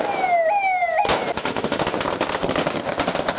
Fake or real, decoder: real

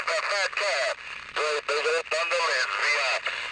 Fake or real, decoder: real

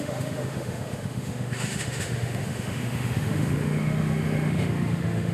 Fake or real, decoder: fake, autoencoder, DAC-VAE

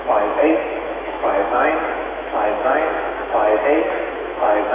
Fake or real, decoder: fake, autoencoder, DAC-VAE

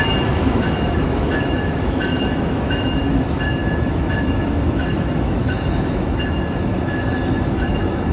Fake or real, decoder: fake, autoencoder, DAC-VAE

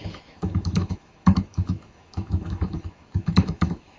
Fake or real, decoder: fake, autoencoder, DAC-VAE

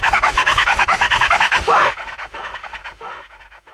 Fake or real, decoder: fake, autoencoder, DAC-VAE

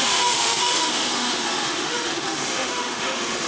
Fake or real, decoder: fake, autoencoder, DAC-VAE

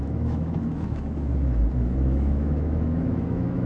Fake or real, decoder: fake, autoencoder, DAC-VAE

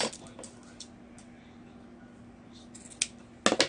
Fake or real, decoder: real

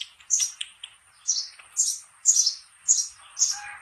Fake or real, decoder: real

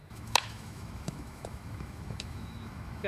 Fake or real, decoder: fake, autoencoder, DAC-VAE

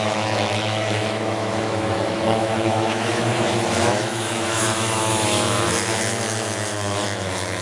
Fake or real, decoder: fake, autoencoder, DAC-VAE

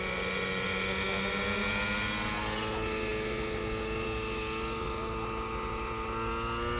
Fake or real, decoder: real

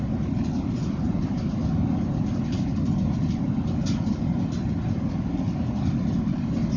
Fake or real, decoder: real